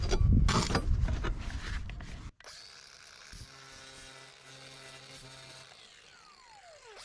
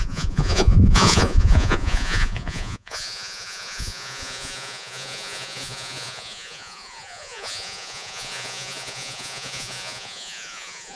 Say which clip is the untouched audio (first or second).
first